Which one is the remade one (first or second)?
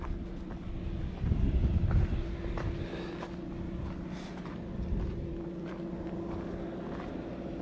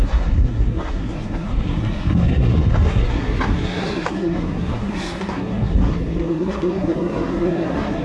second